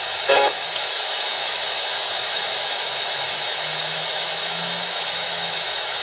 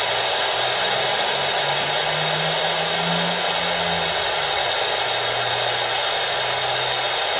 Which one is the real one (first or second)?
second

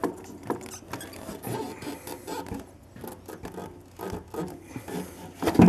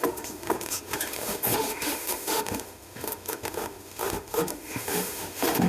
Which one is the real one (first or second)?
first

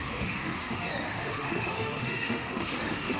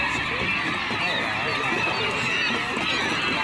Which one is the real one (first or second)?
second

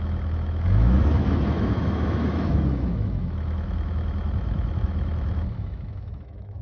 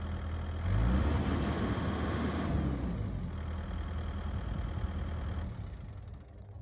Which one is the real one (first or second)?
second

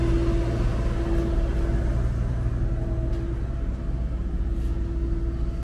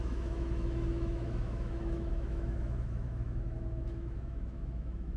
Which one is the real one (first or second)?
first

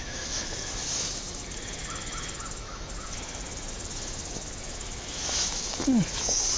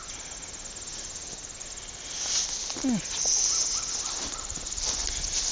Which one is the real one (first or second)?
second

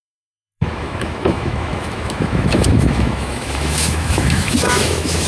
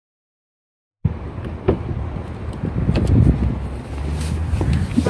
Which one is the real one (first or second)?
second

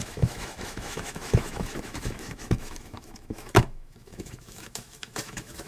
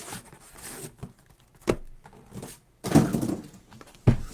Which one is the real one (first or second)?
second